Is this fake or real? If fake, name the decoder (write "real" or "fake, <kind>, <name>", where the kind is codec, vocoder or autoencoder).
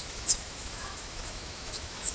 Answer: fake, autoencoder, DAC-VAE